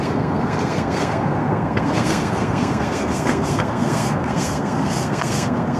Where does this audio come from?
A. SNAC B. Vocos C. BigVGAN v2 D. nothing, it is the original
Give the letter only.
A